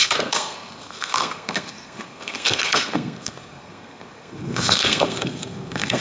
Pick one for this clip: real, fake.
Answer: fake